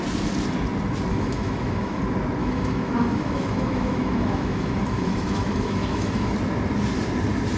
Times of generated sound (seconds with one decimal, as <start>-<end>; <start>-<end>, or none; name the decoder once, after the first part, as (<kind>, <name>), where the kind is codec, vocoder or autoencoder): 1.1-2.0 (autoencoder, DAC-VAE); 2.4-6.3